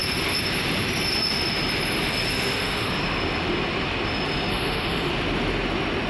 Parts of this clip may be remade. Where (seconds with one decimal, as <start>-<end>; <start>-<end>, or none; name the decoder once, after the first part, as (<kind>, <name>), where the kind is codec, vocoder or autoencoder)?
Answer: 2.3-2.9 (autoencoder, DAC-VAE); 4.5-5.1